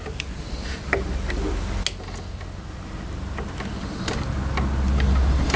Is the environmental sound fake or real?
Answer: real